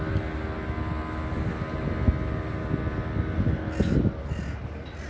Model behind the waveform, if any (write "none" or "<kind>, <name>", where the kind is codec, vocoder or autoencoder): none